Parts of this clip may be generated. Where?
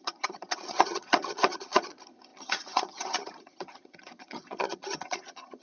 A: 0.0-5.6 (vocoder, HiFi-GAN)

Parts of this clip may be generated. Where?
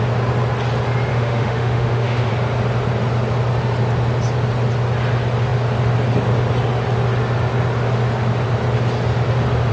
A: 1.1-2.3 (autoencoder, DAC-VAE)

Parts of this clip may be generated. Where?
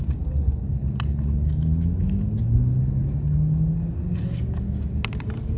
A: none